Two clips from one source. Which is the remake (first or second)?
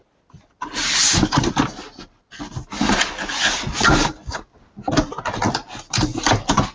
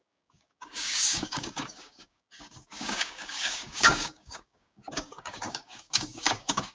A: second